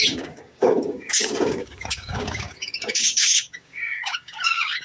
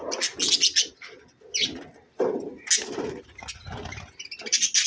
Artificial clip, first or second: first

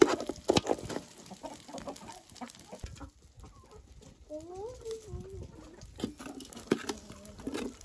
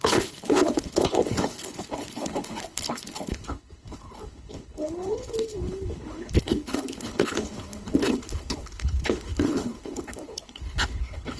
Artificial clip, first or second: second